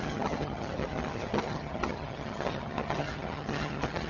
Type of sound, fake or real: fake